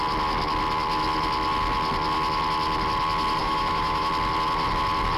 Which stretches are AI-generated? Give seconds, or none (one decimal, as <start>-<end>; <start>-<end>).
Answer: 3.4-4.1